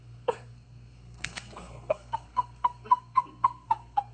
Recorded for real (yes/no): no